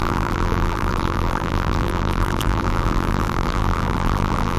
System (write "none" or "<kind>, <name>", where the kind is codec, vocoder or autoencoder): vocoder, BigVGAN v2